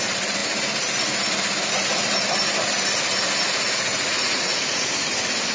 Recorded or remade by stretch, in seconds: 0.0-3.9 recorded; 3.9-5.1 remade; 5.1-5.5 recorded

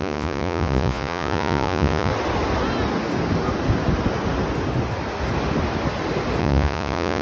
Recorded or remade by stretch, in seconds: 0.0-2.1 remade; 2.1-6.4 recorded; 6.4-7.2 remade